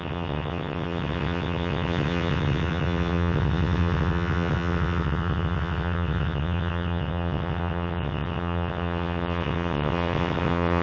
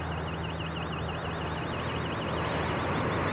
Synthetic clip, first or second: first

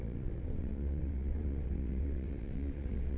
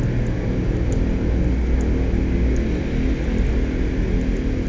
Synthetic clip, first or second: first